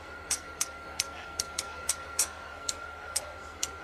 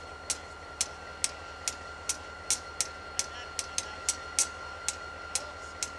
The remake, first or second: first